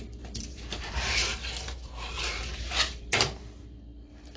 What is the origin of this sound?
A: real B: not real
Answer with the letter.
B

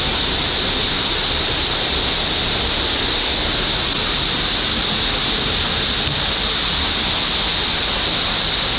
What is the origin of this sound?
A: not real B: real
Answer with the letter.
B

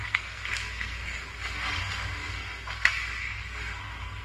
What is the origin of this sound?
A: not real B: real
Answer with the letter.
A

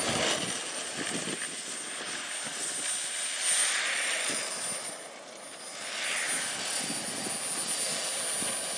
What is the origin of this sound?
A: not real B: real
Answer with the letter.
B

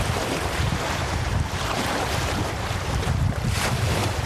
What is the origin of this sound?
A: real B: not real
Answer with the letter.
B